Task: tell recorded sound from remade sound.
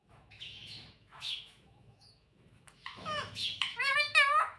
remade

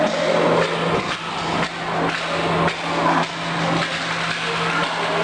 recorded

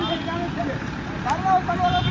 recorded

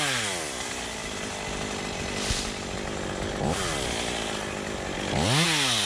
recorded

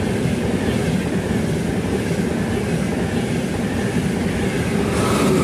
recorded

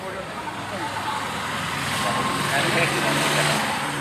recorded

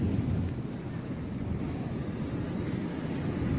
recorded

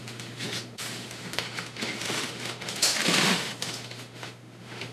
remade